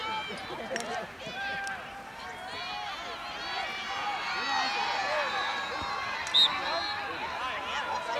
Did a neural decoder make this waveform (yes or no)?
no